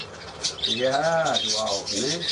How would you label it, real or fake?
real